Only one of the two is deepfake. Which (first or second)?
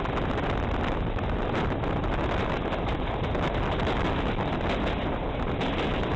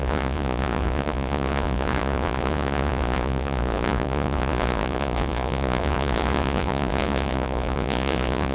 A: second